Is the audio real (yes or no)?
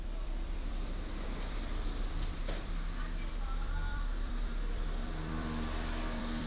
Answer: no